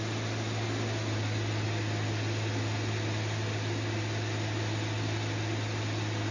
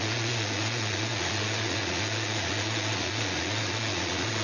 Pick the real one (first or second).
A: first